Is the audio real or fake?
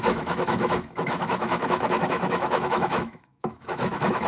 fake